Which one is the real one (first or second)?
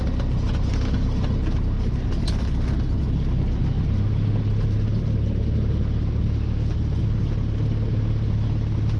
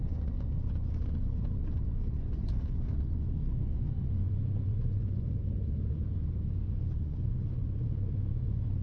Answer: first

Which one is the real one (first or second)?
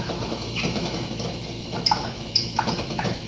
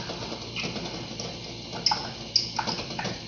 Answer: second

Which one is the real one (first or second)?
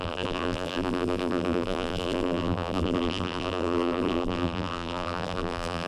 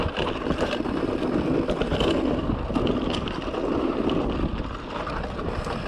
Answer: second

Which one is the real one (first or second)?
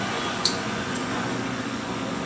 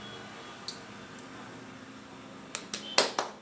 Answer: second